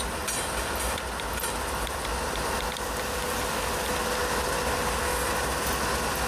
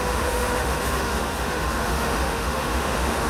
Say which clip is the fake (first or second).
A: second